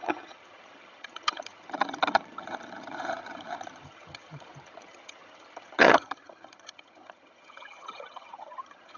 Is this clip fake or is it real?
fake